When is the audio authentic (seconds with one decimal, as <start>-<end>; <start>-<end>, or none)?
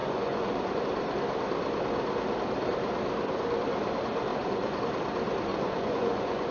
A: 0.8-4.3; 4.8-5.5